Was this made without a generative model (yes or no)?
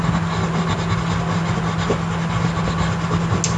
yes